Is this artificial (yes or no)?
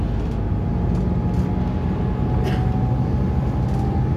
no